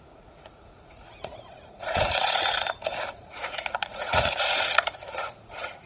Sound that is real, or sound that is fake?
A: fake